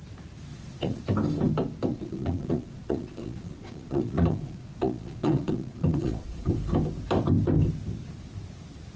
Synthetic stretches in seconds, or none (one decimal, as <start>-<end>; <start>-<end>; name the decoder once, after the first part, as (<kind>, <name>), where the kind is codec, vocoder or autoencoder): 0.5-1.0 (vocoder, Vocos); 1.9-6.5